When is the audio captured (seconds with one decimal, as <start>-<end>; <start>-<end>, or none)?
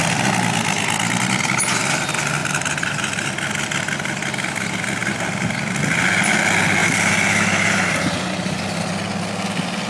0.0-2.4; 3.1-6.8; 8.6-9.9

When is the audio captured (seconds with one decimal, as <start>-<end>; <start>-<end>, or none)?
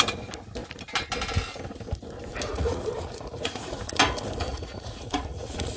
0.0-2.5; 4.0-4.5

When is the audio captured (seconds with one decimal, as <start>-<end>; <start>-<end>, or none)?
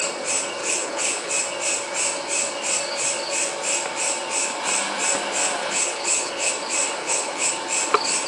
0.0-0.6; 1.3-5.6; 6.5-7.0; 7.5-8.3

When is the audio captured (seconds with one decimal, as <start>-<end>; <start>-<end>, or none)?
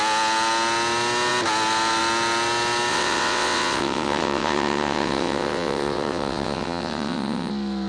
0.0-2.9; 7.5-7.9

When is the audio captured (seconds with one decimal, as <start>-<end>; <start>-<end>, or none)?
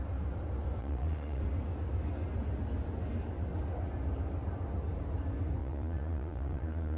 0.0-0.8; 1.4-5.6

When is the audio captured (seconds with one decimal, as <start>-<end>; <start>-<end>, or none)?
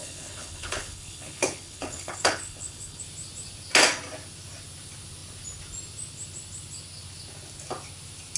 3.0-8.4